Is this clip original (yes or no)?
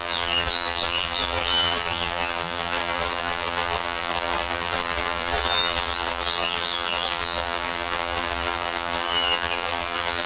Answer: no